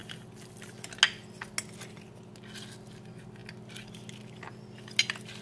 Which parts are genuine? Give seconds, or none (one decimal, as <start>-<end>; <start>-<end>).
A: 0.0-5.4